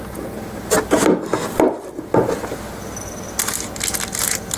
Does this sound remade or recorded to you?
recorded